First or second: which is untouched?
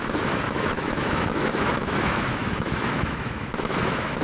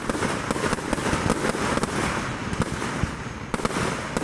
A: second